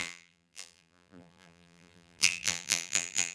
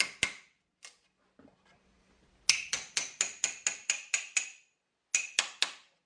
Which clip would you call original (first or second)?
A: second